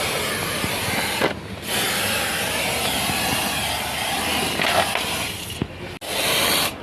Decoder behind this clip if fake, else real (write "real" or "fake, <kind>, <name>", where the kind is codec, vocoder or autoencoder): real